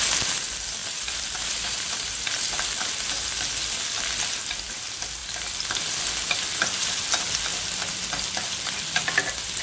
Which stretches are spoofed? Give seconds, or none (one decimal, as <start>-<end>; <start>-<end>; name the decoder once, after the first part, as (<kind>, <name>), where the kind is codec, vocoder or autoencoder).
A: 0.8-2.2 (vocoder, BigVGAN v2)